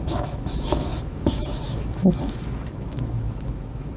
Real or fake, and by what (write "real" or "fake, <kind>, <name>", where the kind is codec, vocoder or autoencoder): fake, autoencoder, DAC-VAE